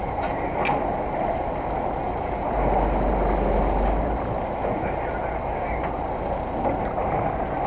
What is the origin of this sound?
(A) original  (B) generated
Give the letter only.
A